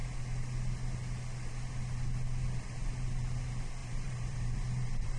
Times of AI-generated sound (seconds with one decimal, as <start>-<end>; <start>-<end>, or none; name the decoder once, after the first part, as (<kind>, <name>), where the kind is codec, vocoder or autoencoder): 3.8-5.2 (vocoder, BigVGAN v2)